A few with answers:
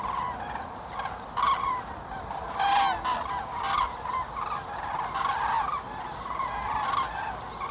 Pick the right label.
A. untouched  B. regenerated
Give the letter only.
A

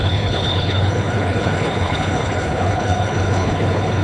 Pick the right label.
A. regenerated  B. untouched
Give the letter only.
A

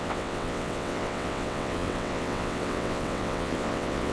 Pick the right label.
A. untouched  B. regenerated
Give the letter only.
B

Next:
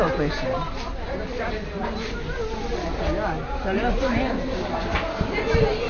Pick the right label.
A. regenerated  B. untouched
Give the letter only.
B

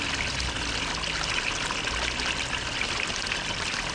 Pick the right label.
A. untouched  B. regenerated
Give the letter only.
A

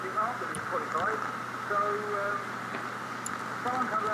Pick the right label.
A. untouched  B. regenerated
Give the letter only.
A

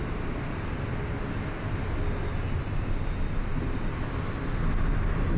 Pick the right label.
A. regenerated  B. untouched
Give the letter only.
B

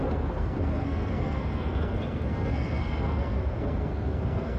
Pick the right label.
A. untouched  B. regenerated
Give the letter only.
B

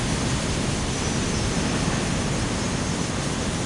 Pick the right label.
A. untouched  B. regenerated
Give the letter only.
A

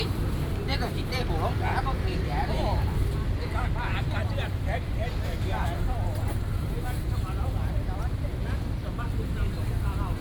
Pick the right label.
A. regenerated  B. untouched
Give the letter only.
A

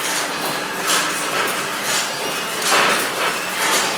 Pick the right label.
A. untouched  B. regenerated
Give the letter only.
A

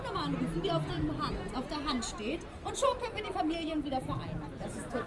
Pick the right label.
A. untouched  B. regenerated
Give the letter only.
A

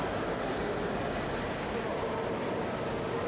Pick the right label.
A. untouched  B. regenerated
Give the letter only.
A